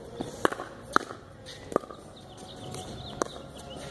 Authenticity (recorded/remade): recorded